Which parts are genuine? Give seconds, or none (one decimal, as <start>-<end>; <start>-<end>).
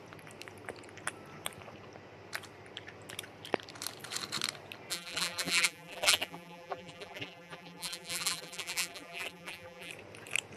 0.0-4.9; 9.9-10.6